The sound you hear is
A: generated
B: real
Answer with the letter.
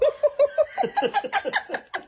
B